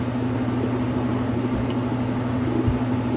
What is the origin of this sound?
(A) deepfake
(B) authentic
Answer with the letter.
B